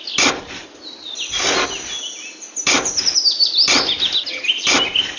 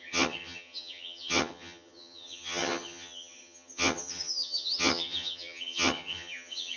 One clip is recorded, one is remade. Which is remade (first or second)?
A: second